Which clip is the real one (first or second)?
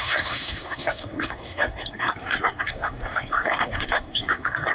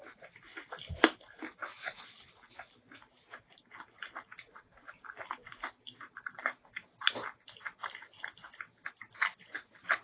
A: second